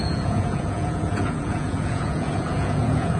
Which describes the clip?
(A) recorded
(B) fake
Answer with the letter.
B